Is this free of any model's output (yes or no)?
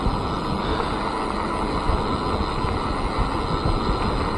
yes